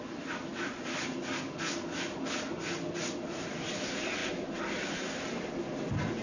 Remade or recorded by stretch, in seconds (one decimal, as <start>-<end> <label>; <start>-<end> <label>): 0.0-6.2 recorded